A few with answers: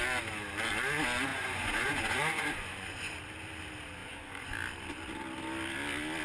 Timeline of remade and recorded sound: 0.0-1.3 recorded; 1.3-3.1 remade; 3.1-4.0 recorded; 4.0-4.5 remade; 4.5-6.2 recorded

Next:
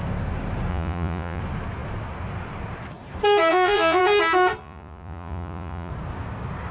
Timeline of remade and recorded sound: 0.0-0.7 recorded; 0.7-1.4 remade; 1.4-3.5 recorded; 3.5-4.0 remade; 4.0-4.6 recorded; 4.6-5.9 remade; 5.9-6.7 recorded

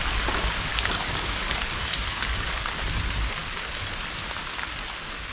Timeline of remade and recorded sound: 0.0-0.7 recorded; 0.7-2.8 remade; 2.8-3.4 recorded; 3.4-3.9 remade; 3.9-5.3 recorded

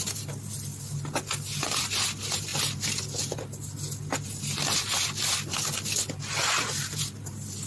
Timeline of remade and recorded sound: 0.0-7.7 recorded